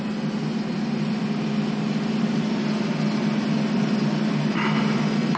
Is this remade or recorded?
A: recorded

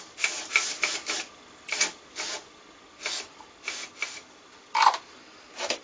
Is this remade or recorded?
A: recorded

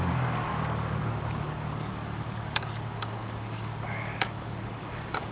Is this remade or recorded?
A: remade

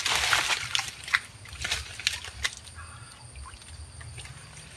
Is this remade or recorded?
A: recorded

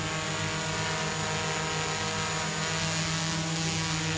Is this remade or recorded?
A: recorded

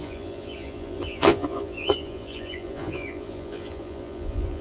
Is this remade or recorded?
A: remade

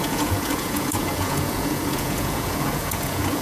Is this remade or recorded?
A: remade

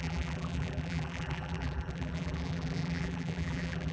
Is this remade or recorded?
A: remade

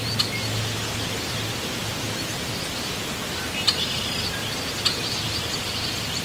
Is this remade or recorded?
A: recorded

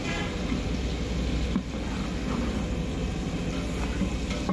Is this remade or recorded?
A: recorded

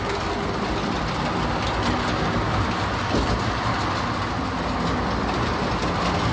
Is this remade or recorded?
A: recorded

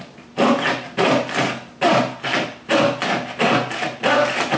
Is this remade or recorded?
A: recorded